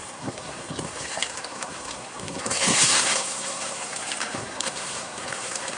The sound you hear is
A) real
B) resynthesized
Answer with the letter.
B